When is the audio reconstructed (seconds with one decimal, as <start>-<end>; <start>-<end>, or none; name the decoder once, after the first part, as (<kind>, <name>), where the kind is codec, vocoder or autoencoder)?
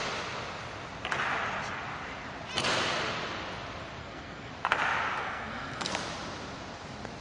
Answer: 4.0-4.5 (codec, SNAC); 5.2-5.9